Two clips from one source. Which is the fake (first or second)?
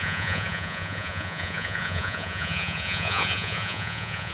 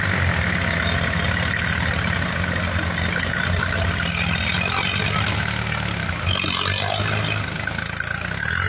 first